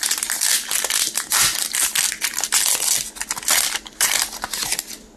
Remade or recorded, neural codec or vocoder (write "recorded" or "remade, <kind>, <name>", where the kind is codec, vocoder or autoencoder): recorded